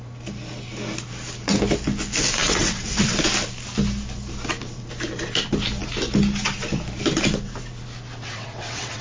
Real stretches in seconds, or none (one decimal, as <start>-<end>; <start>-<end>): 0.0-2.4; 3.2-8.2